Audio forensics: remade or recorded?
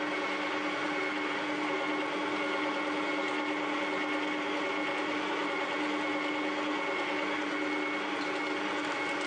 recorded